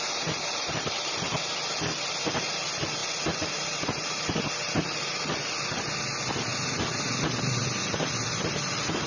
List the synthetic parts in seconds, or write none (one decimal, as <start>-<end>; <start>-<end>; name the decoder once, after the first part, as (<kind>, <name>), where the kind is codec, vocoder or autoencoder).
none